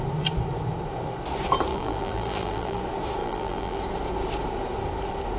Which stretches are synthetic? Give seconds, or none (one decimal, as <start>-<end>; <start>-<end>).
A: 1.7-2.8; 3.2-3.8